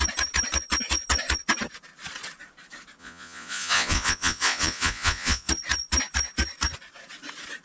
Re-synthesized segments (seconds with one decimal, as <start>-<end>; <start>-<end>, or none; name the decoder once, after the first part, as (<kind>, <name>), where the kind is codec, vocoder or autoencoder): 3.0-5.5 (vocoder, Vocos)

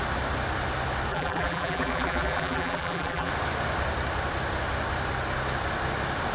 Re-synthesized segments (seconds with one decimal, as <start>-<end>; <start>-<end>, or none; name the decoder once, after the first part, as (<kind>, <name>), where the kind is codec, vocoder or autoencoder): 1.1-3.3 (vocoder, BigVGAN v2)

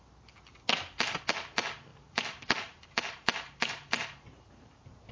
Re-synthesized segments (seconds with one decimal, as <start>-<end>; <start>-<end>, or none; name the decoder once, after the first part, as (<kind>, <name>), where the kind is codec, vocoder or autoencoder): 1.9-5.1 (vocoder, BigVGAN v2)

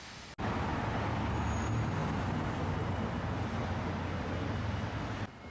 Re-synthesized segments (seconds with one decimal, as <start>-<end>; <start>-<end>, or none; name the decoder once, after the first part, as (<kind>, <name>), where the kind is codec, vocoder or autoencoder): none

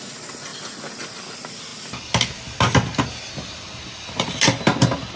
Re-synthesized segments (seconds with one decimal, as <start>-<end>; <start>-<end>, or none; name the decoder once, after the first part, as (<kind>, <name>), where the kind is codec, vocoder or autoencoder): none